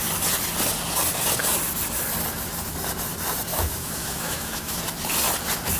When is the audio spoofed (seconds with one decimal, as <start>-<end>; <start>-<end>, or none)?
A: 3.5-4.8